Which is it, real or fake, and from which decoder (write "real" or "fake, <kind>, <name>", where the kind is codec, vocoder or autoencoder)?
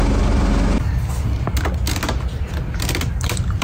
real